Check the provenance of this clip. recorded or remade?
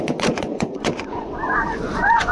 remade